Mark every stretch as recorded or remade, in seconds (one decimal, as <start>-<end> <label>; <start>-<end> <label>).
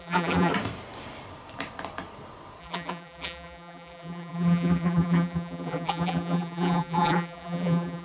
0.0-0.5 remade; 0.5-2.6 recorded; 2.6-8.0 remade